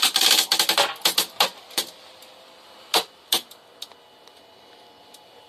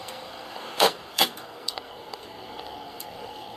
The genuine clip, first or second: first